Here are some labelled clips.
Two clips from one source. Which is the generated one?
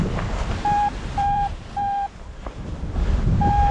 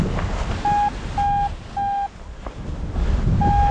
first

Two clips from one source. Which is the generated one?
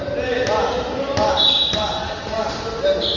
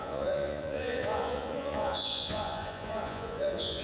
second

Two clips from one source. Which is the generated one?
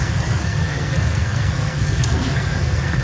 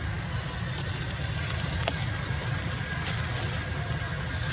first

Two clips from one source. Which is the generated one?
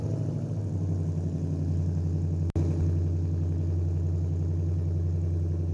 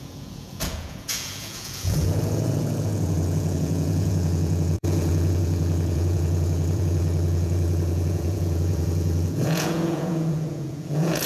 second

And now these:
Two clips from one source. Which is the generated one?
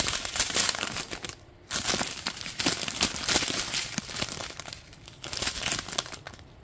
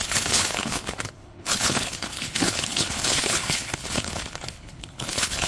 second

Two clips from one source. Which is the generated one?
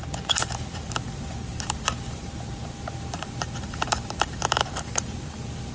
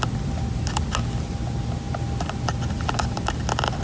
first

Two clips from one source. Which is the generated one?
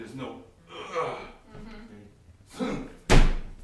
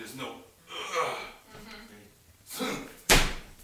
second